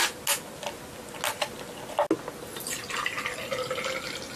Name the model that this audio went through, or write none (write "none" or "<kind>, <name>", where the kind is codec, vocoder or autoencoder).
none